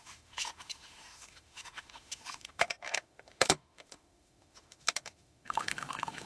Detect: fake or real fake